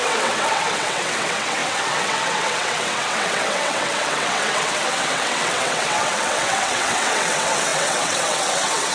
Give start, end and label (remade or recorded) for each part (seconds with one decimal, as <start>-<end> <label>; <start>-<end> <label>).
0.0-8.9 remade